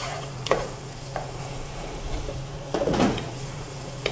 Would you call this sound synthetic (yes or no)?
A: yes